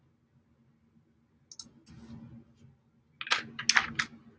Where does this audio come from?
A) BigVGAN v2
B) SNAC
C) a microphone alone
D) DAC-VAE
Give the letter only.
C